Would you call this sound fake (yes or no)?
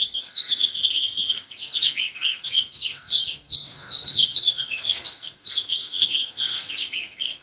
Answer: yes